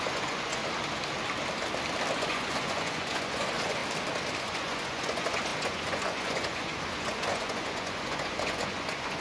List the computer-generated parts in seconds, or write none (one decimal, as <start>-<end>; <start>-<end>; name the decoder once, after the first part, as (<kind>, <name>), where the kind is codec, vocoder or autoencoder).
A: 0.0-0.6 (vocoder, Vocos); 2.1-3.8; 4.4-9.2